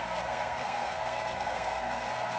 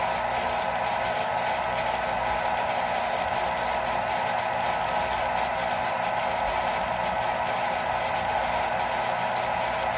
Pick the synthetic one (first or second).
first